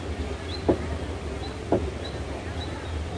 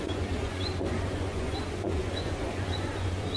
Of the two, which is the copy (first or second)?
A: second